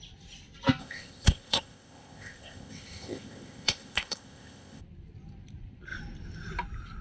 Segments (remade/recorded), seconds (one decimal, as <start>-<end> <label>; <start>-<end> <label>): 0.0-0.8 recorded; 0.8-4.8 remade; 4.8-7.0 recorded